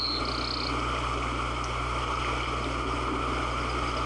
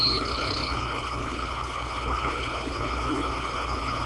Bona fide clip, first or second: first